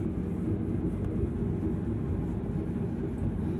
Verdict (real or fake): real